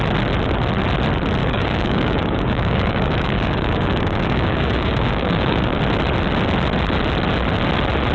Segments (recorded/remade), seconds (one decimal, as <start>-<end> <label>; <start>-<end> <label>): 0.0-1.4 recorded; 1.4-5.8 remade; 5.8-8.1 recorded